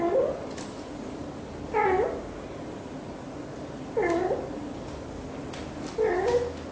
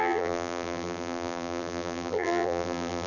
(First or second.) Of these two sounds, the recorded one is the first